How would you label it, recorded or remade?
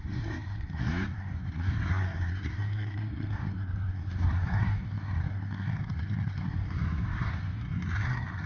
remade